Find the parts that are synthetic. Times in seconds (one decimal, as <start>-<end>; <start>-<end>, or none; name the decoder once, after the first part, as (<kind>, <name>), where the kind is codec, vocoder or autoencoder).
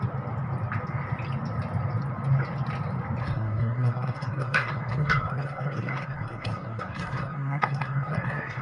3.2-8.6 (codec, SNAC)